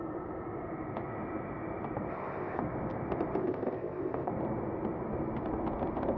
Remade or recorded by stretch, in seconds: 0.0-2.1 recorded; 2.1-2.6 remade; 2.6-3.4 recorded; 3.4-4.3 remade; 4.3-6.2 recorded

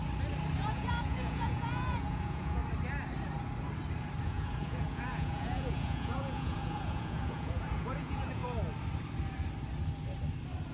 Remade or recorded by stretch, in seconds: 0.0-0.6 recorded; 0.6-2.6 remade; 2.6-4.2 recorded; 4.2-8.4 remade; 8.4-10.7 recorded

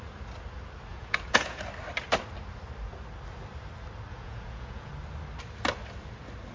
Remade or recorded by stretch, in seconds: 0.0-0.9 recorded; 0.9-1.6 remade; 1.6-4.1 recorded; 4.1-4.9 remade; 4.9-6.5 recorded